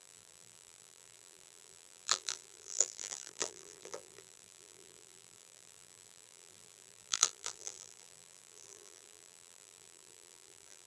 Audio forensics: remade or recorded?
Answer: remade